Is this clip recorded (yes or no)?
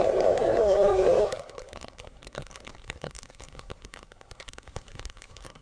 no